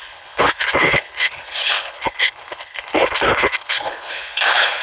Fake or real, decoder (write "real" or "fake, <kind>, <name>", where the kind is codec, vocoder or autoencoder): fake, codec, HILCodec